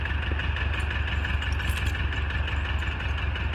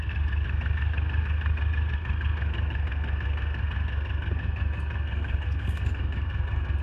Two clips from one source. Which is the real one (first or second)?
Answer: first